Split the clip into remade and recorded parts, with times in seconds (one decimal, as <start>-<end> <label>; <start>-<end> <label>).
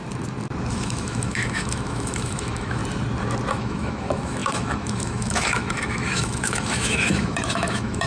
0.0-0.7 recorded; 0.7-2.8 remade; 2.8-3.5 recorded; 3.5-8.1 remade